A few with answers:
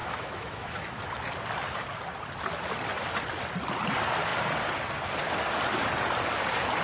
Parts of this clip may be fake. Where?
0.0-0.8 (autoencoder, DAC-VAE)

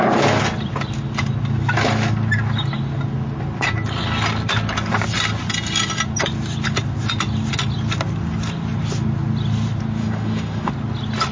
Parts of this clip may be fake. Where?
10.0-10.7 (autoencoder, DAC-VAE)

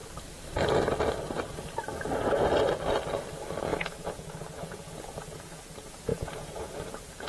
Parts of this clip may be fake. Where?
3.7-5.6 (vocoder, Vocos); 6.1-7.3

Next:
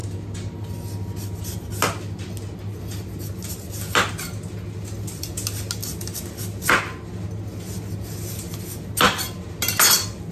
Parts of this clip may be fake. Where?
none

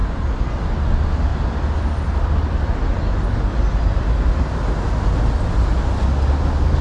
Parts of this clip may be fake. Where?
none

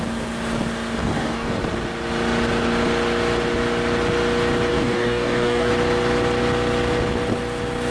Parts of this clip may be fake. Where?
1.0-1.6 (codec, DAC); 4.7-5.7

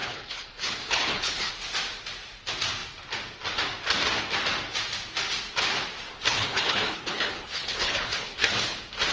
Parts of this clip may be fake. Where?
0.0-1.5 (codec, HILCodec); 6.3-8.5